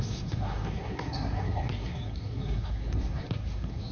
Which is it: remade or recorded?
remade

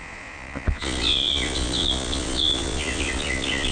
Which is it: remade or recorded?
remade